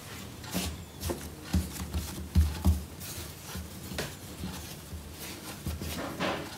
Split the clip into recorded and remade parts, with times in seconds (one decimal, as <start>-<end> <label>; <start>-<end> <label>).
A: 0.0-6.6 recorded